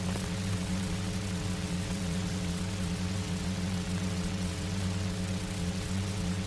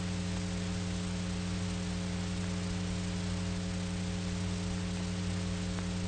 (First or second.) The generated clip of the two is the first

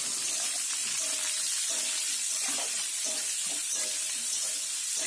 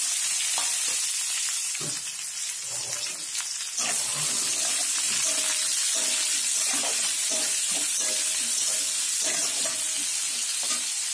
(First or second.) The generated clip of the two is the first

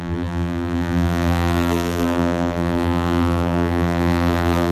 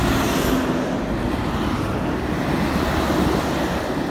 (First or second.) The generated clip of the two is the first